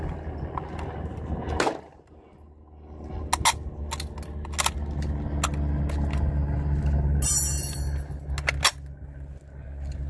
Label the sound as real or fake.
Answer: real